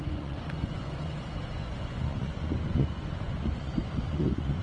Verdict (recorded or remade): remade